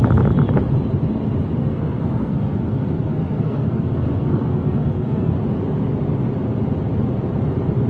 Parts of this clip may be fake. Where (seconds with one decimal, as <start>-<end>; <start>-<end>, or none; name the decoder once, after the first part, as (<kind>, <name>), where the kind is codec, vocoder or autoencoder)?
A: 1.6-5.3 (codec, SNAC)